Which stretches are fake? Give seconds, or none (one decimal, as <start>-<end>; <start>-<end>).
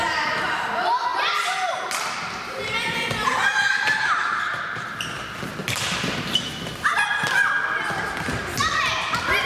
none